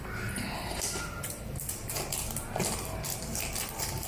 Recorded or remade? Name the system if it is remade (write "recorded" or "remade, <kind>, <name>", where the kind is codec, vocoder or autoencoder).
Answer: recorded